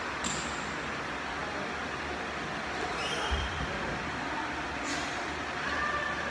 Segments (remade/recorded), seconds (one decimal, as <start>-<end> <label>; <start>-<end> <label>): 0.0-6.3 recorded